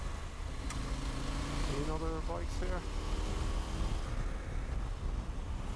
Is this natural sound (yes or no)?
yes